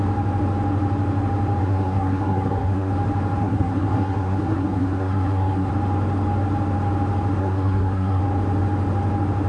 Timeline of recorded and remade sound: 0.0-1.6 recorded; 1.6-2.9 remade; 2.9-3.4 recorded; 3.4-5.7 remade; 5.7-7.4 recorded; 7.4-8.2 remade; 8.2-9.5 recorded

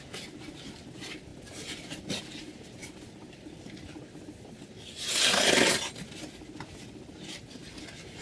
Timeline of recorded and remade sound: 0.0-8.2 recorded

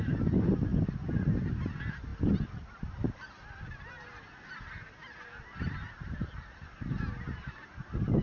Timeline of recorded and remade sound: 0.0-8.2 recorded

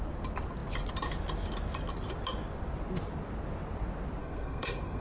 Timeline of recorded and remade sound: 0.0-4.2 recorded; 4.2-5.0 remade

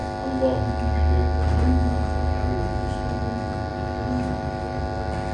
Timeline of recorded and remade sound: 0.0-3.7 recorded; 3.7-4.8 remade; 4.8-5.3 recorded

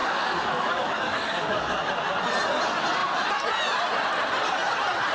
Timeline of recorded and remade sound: 0.0-1.9 remade; 1.9-5.1 recorded

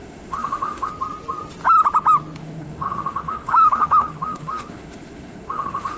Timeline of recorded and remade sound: 0.0-0.9 remade; 0.9-2.4 recorded; 2.4-6.0 remade

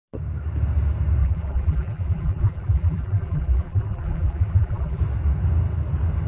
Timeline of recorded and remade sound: 0.0-1.2 recorded; 1.2-5.0 remade; 5.0-6.3 recorded